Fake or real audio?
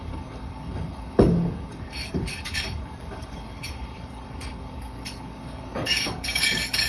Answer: fake